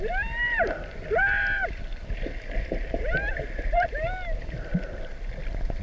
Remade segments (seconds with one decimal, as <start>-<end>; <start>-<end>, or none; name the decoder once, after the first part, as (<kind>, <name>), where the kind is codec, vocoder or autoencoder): none